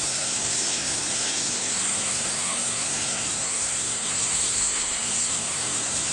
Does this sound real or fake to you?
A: fake